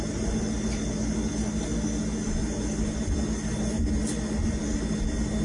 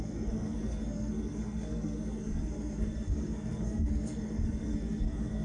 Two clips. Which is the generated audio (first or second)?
second